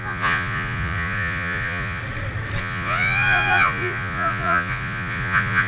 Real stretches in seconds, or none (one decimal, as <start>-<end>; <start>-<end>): 2.0-2.6